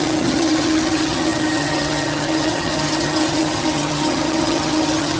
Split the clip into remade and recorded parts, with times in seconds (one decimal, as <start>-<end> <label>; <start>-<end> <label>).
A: 0.0-5.2 remade